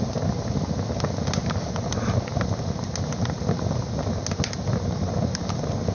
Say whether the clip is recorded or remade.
recorded